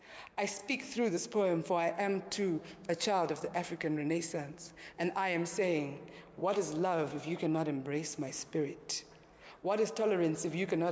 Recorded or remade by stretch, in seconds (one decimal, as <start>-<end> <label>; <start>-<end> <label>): 0.0-0.6 recorded; 0.6-5.5 remade; 5.5-6.4 recorded; 6.4-8.3 remade; 8.3-10.9 recorded